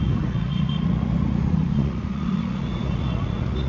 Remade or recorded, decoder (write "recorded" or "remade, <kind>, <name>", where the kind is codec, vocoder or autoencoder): remade, vocoder, Vocos